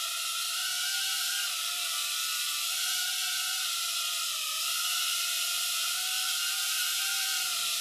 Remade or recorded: remade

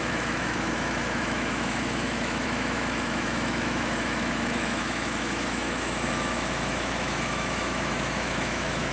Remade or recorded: remade